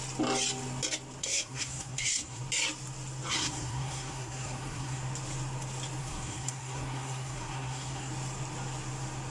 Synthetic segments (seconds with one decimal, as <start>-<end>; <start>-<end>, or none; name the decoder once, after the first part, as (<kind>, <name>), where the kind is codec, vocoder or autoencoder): 1.2-2.4 (codec, SNAC); 3.3-5.0; 6.0-8.1